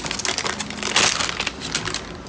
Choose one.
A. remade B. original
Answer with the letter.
B